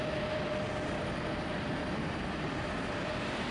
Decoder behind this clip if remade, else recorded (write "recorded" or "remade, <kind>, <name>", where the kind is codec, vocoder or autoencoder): recorded